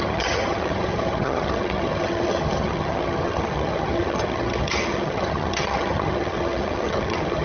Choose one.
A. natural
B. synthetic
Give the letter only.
B